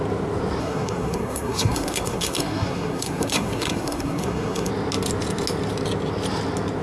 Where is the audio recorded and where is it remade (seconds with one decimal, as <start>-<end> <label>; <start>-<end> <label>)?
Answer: 0.0-0.6 recorded; 0.6-4.7 remade; 4.7-6.8 recorded